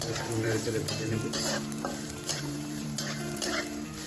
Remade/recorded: remade